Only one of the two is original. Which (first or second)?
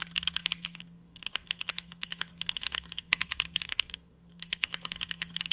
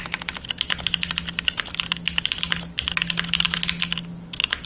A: second